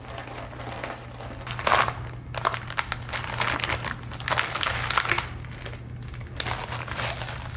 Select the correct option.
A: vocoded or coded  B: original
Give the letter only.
B